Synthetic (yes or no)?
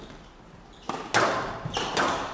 no